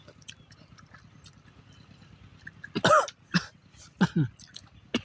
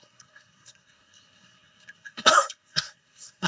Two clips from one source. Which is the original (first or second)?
first